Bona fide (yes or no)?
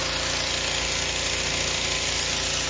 yes